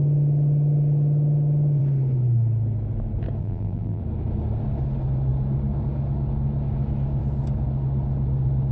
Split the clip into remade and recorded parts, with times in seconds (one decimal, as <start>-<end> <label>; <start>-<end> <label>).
0.0-3.4 recorded; 3.4-4.0 remade; 4.0-8.7 recorded